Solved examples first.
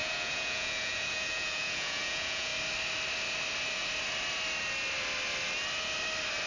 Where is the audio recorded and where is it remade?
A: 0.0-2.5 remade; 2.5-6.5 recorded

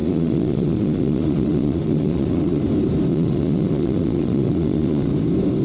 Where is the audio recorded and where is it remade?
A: 0.0-2.6 remade; 2.6-3.1 recorded; 3.1-5.1 remade; 5.1-5.6 recorded